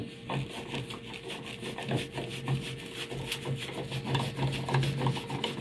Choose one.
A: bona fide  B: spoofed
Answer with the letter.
A